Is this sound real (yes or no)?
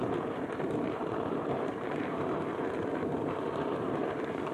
no